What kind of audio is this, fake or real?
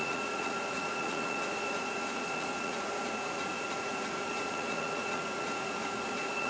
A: fake